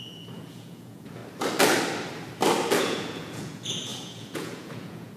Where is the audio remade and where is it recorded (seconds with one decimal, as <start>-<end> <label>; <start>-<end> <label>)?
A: 0.0-1.2 remade; 1.2-2.8 recorded; 2.8-5.2 remade